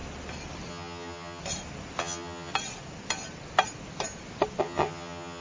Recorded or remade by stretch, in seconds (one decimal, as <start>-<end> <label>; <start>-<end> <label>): 0.0-0.7 recorded; 0.7-1.4 remade; 1.4-2.0 recorded; 2.0-2.5 remade; 2.5-4.6 recorded; 4.6-5.4 remade